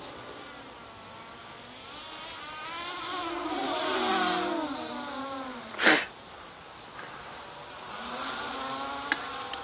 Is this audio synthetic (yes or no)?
no